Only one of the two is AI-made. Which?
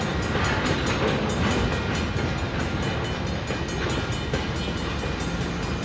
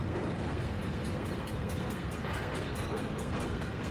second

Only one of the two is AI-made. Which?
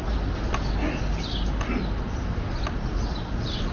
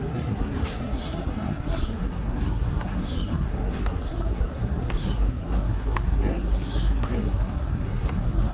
second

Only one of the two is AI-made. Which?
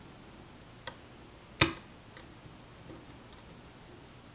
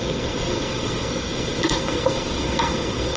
second